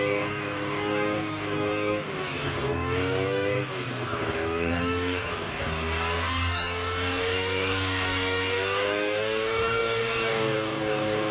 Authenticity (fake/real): fake